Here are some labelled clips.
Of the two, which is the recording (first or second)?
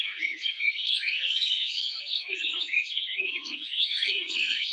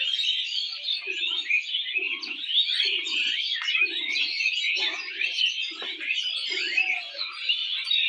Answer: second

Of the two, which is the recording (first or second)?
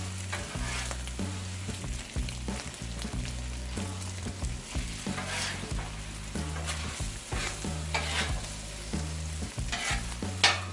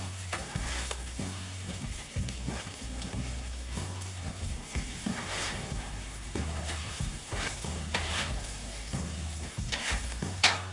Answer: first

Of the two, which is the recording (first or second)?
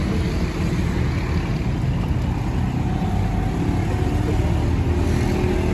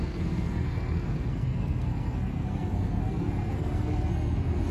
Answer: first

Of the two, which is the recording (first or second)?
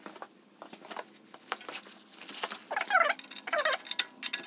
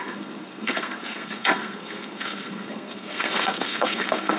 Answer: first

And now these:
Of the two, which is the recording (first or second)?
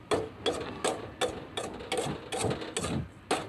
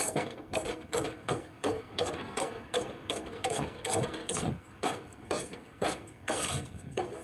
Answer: first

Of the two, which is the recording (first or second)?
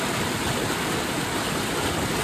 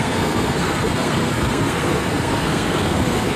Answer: first